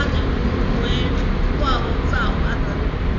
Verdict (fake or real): real